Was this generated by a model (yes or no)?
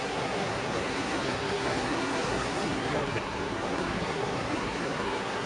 yes